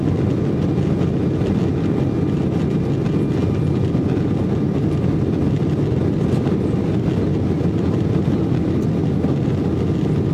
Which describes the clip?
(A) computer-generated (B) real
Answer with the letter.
B